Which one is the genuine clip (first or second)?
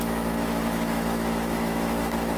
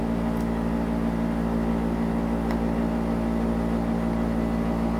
second